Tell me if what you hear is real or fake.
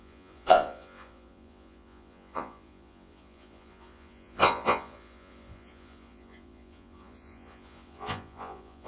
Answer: fake